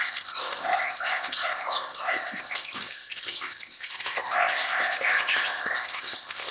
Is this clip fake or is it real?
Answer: fake